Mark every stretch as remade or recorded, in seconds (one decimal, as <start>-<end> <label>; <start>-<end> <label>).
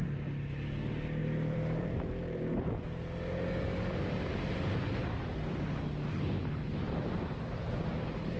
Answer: 0.0-1.2 recorded; 1.2-2.7 remade; 2.7-4.3 recorded; 4.3-4.9 remade; 4.9-8.4 recorded